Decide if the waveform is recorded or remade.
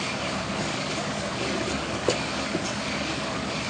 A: remade